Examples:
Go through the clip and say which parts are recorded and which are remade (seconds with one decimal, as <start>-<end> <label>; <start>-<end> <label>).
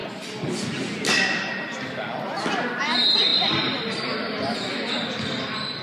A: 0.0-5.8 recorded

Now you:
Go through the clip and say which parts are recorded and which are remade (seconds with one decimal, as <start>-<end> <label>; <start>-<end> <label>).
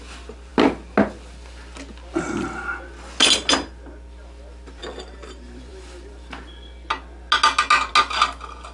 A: 0.0-8.7 recorded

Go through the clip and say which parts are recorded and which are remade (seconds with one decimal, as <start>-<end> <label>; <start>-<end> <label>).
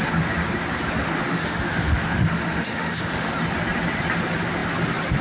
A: 0.0-1.0 recorded; 1.0-3.3 remade; 3.3-5.2 recorded